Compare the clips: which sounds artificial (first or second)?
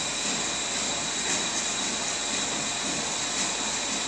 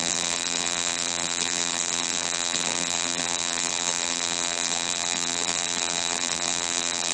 second